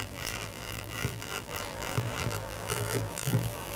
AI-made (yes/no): yes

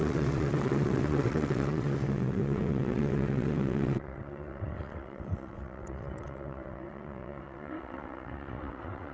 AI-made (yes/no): yes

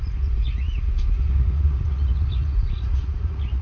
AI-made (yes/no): yes